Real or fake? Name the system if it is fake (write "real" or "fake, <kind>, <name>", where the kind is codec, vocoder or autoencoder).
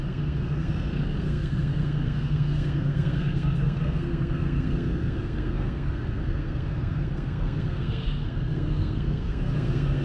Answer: fake, codec, SNAC